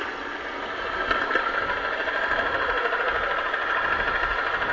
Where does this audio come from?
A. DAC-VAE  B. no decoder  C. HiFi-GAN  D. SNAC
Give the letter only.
B